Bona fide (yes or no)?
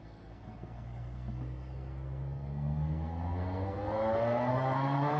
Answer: no